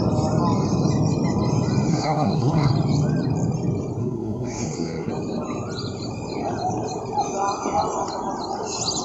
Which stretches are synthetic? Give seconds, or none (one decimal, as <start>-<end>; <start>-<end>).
1.9-2.7; 4.0-5.1